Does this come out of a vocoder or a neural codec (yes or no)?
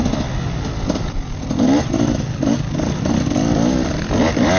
no